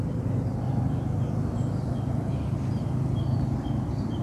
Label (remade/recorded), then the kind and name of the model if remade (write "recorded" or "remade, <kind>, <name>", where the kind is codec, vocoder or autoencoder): recorded